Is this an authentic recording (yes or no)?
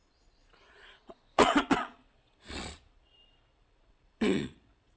no